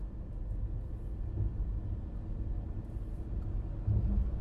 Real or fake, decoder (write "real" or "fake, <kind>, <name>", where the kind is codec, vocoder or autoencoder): real